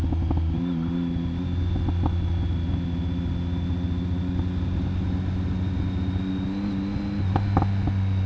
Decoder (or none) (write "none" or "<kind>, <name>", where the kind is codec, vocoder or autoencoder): none